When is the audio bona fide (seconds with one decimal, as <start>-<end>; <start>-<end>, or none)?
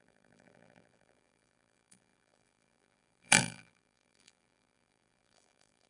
none